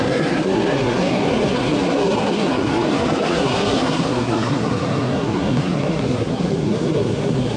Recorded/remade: remade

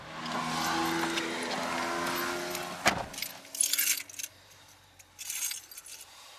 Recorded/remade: recorded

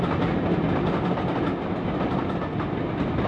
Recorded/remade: recorded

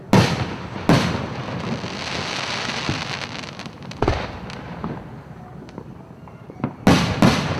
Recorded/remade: recorded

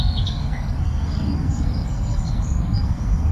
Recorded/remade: remade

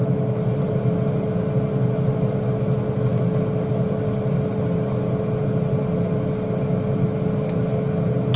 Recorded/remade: recorded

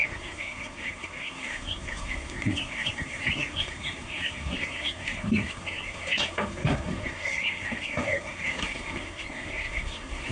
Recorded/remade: remade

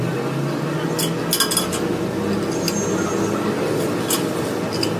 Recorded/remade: recorded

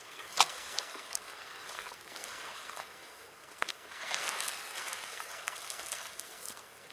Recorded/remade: remade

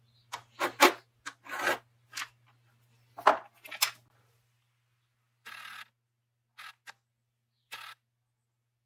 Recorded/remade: recorded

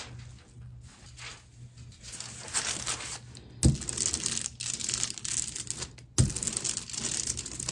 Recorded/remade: recorded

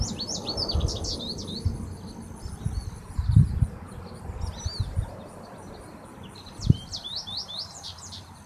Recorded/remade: recorded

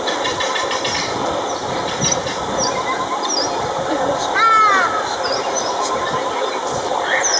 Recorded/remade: recorded